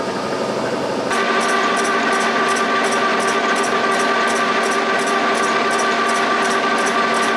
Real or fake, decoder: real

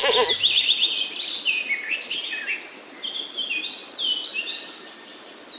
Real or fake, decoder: real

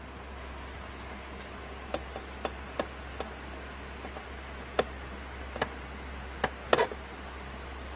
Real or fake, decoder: real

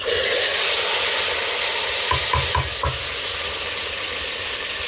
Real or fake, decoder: real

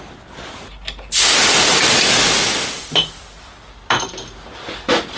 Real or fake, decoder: real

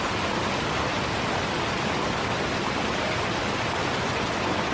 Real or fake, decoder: real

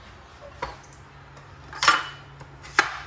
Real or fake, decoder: real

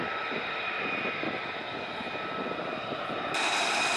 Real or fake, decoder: real